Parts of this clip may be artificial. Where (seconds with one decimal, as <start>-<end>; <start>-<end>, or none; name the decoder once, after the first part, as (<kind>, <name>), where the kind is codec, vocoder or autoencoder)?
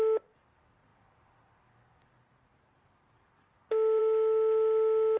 none